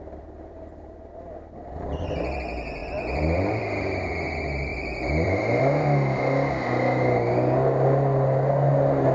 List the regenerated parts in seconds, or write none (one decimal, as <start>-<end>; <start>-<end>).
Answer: 2.8-3.6; 4.7-5.6